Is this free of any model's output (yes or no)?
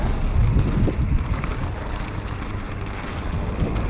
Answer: yes